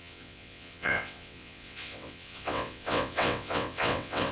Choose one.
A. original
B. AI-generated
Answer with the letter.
B